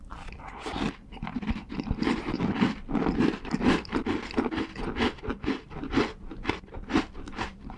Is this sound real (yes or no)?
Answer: no